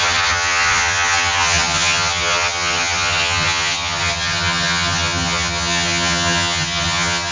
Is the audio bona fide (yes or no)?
no